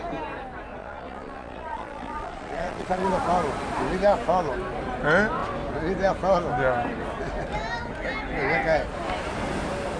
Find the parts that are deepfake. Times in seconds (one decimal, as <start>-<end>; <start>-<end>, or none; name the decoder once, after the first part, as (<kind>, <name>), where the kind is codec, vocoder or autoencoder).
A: 0.8-3.1 (vocoder, Vocos)